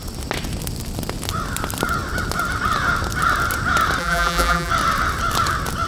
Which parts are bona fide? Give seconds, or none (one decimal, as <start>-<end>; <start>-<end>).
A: 0.0-4.0; 4.7-5.9